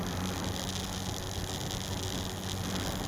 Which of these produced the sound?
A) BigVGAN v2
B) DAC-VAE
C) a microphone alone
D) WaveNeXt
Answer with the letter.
C